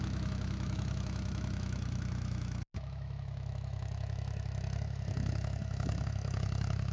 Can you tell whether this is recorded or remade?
remade